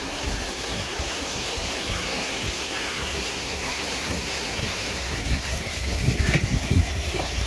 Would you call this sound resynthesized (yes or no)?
yes